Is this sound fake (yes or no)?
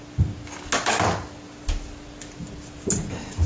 no